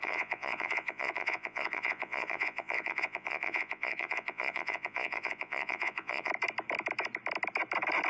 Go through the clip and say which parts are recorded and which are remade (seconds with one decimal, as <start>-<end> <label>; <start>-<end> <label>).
0.0-6.3 remade; 6.3-8.1 recorded

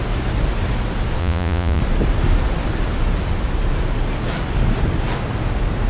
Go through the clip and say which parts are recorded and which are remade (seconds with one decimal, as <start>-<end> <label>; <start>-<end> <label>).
0.0-1.2 recorded; 1.2-1.8 remade; 1.8-5.9 recorded

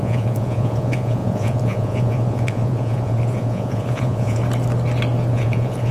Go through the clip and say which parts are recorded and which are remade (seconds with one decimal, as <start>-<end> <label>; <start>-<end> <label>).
0.0-4.4 remade; 4.4-5.3 recorded; 5.3-5.9 remade